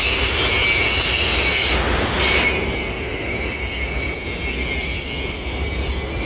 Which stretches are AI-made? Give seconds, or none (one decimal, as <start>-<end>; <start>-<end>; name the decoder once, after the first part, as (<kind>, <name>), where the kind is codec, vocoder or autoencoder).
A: none

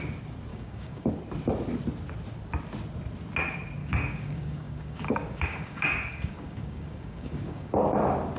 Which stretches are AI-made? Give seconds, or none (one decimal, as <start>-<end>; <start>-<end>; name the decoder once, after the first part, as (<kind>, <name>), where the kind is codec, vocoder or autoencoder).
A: 0.5-1.1 (codec, DAC); 3.8-7.7